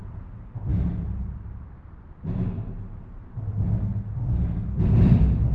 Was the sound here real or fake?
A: real